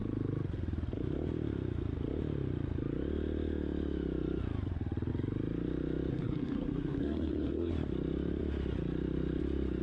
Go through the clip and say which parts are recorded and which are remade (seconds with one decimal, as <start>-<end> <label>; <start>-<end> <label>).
0.0-6.1 recorded; 6.1-7.7 remade; 7.7-9.8 recorded